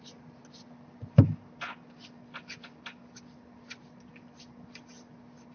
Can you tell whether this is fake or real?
real